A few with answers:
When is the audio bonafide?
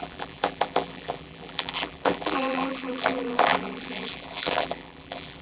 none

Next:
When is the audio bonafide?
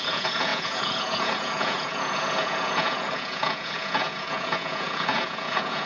none